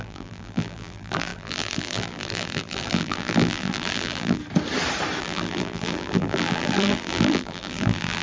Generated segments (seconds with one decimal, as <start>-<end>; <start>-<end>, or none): 0.0-4.4; 5.2-8.2